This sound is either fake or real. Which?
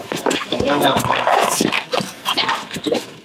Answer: fake